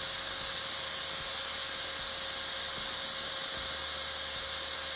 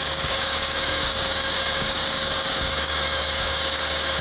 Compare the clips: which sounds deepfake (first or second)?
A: second